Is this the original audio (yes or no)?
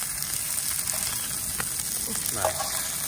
yes